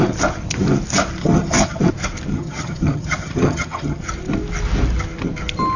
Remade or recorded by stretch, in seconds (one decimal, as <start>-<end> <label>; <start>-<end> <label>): 0.0-1.2 recorded; 1.2-1.8 remade; 1.8-2.3 recorded; 2.3-4.0 remade; 4.0-5.8 recorded